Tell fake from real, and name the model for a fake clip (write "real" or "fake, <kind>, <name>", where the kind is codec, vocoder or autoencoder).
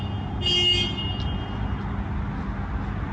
real